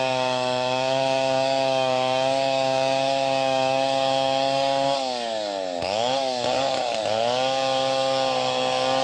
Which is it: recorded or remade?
remade